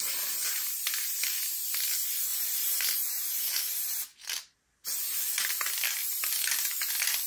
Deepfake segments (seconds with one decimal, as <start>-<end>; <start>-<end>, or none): 0.4-1.6